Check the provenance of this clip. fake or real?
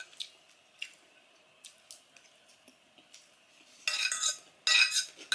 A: real